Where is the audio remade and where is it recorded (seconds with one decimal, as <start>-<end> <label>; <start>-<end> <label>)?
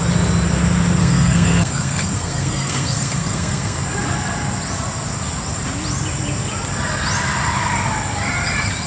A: 0.0-1.0 recorded; 1.0-3.8 remade; 3.8-8.9 recorded